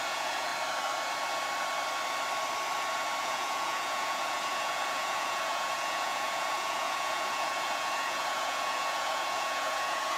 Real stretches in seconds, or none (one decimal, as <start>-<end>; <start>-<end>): 0.5-3.2